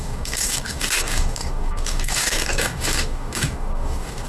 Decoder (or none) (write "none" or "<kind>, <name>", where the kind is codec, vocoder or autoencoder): codec, DAC